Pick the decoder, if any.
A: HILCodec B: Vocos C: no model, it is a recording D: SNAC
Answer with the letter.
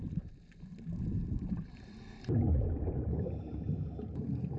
C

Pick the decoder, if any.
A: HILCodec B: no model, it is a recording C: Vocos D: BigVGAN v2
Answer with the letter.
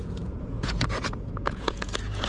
C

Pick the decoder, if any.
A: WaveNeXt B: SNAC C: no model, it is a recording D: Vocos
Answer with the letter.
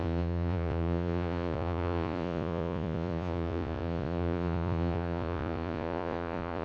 D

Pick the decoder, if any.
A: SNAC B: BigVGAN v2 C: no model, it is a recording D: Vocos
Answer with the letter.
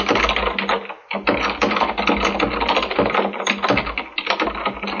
C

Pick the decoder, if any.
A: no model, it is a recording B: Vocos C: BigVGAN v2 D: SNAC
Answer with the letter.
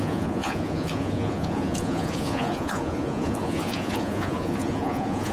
B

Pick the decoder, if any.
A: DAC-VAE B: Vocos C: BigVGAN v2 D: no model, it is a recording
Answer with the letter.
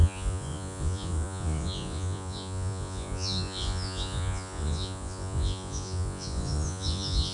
B